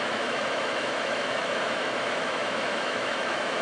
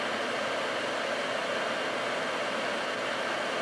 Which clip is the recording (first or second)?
second